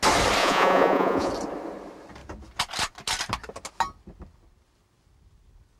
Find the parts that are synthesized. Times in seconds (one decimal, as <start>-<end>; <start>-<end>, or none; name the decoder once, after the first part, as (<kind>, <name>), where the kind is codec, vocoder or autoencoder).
0.4-1.3 (vocoder, Vocos)